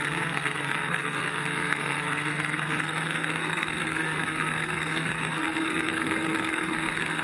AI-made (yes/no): yes